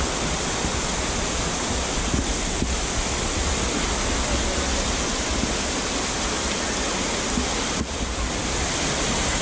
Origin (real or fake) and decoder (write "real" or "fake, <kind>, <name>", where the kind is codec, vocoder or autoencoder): real